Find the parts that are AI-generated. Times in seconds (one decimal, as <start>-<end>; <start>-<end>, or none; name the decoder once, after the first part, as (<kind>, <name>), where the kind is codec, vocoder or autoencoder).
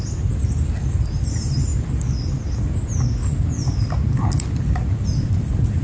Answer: 0.0-1.7 (vocoder, BigVGAN v2); 5.1-5.8